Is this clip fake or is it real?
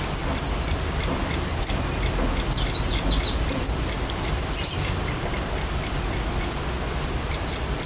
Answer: real